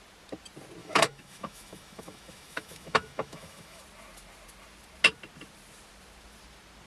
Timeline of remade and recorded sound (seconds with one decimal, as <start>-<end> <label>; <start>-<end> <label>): 0.0-0.8 recorded; 0.8-3.8 remade; 3.8-6.9 recorded